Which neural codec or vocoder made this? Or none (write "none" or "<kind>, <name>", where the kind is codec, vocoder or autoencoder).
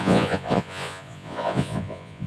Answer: vocoder, Vocos